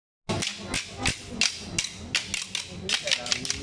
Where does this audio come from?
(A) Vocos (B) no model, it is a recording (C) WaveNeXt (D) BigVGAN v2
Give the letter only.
B